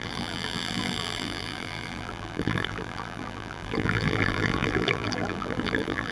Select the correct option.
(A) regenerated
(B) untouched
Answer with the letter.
A